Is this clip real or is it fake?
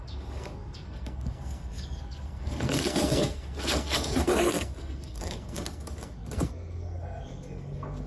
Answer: fake